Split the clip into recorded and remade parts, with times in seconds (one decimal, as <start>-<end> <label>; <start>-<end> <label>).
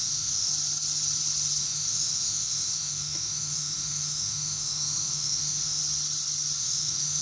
0.0-0.5 remade; 0.5-1.6 recorded; 1.6-5.8 remade; 5.8-6.6 recorded; 6.6-7.2 remade